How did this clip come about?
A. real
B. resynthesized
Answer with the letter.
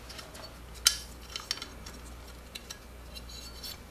A